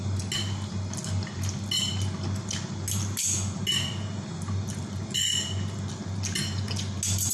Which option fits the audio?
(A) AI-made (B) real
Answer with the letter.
B